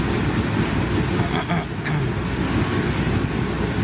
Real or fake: real